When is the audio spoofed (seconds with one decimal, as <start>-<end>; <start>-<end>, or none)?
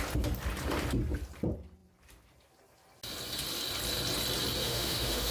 4.6-5.3